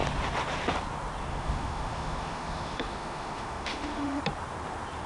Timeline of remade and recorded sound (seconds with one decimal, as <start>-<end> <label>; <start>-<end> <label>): 0.0-1.3 recorded; 1.3-4.2 remade; 4.2-5.1 recorded

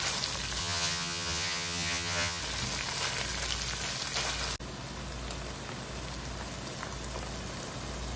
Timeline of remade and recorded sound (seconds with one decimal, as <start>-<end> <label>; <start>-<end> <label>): 0.0-0.6 recorded; 0.6-2.4 remade; 2.4-8.2 recorded

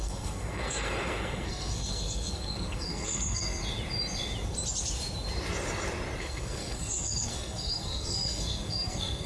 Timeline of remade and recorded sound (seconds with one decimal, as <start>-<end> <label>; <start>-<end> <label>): 0.0-3.6 remade; 3.6-6.2 recorded; 6.2-9.3 remade

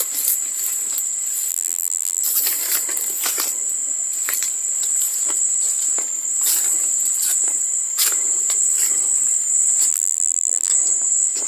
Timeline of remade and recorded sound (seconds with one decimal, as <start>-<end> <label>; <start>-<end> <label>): 0.0-1.5 recorded; 1.5-2.2 remade; 2.2-9.9 recorded; 9.9-10.7 remade; 10.7-11.5 recorded

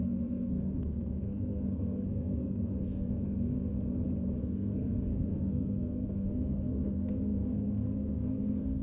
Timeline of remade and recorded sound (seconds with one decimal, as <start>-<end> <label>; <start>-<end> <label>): 0.0-3.7 remade; 3.7-4.4 recorded; 4.4-8.8 remade

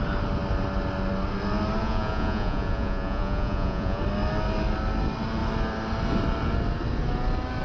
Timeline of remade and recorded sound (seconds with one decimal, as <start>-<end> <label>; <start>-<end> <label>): 0.0-1.8 recorded; 1.8-4.0 remade; 4.0-7.6 recorded

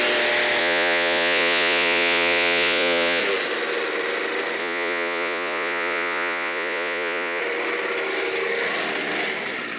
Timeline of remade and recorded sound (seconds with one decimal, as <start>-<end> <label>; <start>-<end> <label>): 0.0-0.6 recorded; 0.6-3.2 remade; 3.2-4.6 recorded; 4.6-7.4 remade; 7.4-9.8 recorded